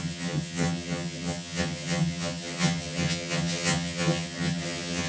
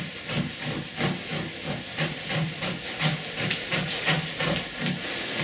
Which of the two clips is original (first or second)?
second